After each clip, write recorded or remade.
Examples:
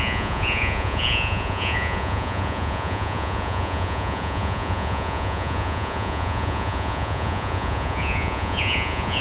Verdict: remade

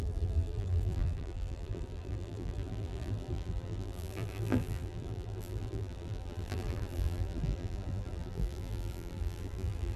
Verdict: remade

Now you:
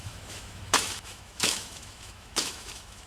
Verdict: remade